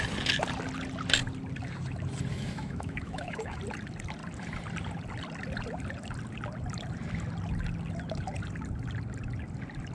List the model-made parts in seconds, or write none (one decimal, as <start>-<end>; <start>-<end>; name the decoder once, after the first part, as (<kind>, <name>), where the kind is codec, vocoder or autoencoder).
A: 2.3-3.6 (autoencoder, DAC-VAE)